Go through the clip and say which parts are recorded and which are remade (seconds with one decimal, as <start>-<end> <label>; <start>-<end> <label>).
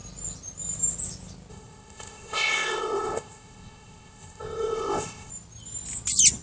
0.0-1.5 recorded; 1.5-5.3 remade; 5.3-6.4 recorded